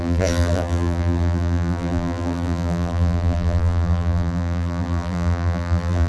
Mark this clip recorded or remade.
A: remade